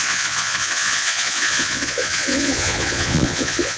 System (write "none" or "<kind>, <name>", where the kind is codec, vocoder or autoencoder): vocoder, Vocos